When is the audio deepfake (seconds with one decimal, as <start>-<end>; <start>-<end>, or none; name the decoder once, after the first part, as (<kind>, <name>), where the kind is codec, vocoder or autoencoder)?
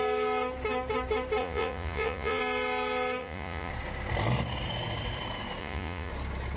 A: 1.4-2.4 (vocoder, Vocos); 3.2-3.7; 5.6-6.1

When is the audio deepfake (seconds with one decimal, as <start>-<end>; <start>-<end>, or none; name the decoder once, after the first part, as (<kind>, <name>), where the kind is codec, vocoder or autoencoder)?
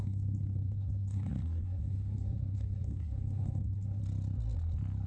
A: 0.0-4.0 (codec, SNAC)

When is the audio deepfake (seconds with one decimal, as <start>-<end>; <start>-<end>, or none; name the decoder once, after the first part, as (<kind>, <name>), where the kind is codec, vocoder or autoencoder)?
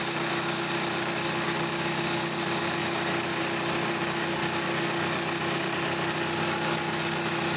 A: none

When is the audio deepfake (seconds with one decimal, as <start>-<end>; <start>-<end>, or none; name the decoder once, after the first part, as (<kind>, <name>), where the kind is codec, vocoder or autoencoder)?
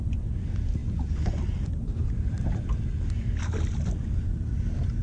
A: none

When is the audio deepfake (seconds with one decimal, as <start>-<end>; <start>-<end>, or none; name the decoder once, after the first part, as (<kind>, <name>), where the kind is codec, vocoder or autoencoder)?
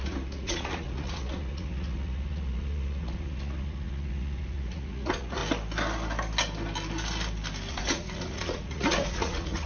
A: 0.0-5.4 (vocoder, Vocos); 7.7-9.7